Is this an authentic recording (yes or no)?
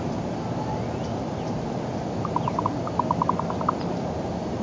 yes